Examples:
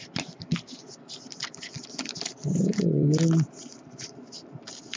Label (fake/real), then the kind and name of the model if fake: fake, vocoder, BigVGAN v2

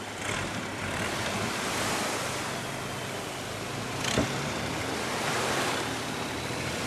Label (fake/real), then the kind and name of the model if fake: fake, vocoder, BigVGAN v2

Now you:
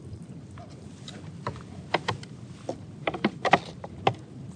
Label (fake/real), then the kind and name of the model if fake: fake, vocoder, BigVGAN v2